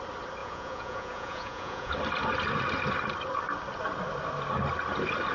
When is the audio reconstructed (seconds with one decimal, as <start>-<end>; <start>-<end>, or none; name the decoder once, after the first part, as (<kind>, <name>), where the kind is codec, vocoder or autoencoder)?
0.4-1.9 (vocoder, Vocos)